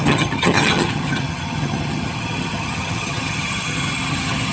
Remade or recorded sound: remade